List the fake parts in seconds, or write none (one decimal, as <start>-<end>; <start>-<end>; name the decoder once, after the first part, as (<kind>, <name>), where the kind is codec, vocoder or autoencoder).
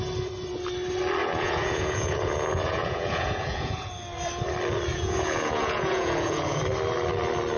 1.2-3.9 (vocoder, Vocos); 4.9-6.6